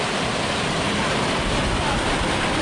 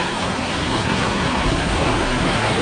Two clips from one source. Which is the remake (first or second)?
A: second